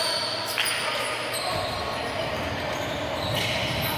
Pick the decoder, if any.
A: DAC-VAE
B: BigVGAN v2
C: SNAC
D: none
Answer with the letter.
D